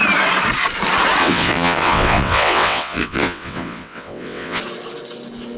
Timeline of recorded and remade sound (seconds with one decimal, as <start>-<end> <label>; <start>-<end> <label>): 0.0-1.2 recorded; 1.2-4.6 remade; 4.6-5.6 recorded